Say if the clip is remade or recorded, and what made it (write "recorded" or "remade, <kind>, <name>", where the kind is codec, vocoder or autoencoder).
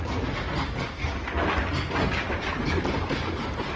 recorded